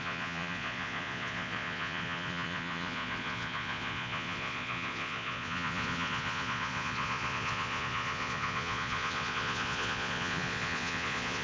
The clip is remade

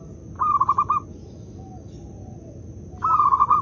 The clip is recorded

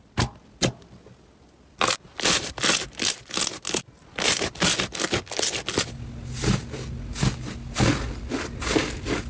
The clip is recorded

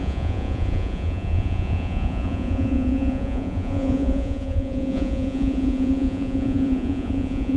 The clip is remade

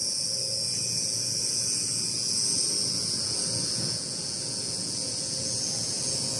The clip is remade